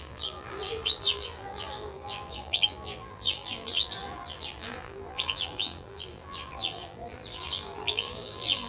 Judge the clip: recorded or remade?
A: remade